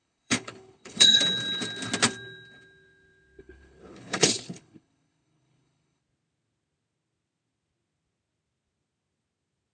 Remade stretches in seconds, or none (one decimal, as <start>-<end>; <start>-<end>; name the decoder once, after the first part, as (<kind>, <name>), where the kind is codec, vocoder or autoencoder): 0.0-1.2 (codec, HILCodec); 3.4-6.0